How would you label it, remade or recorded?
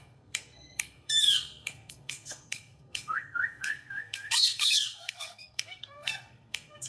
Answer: remade